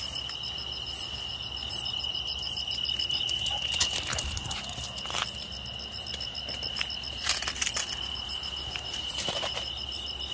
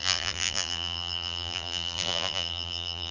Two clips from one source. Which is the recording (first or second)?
first